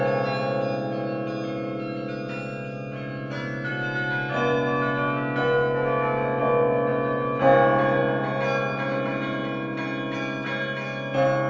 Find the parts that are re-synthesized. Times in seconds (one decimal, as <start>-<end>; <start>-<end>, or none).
none